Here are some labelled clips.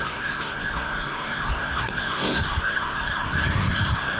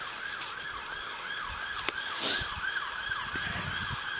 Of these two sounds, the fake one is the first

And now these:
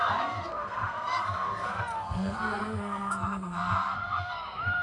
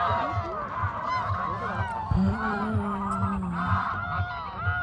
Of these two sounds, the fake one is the first